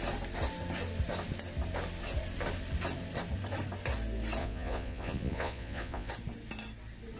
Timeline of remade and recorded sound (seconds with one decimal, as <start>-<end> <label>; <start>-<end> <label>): 0.0-4.4 recorded; 4.4-6.1 remade; 6.1-7.2 recorded